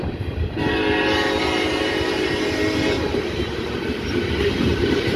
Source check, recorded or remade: remade